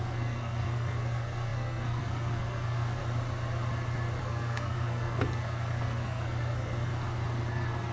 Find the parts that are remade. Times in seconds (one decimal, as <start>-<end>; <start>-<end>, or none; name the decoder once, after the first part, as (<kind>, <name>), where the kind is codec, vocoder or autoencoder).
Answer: 0.0-3.0 (codec, SNAC); 4.2-6.9; 7.5-7.9